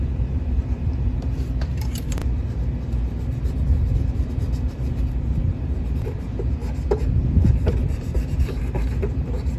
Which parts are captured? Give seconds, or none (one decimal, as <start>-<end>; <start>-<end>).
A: 2.2-5.0; 6.6-7.8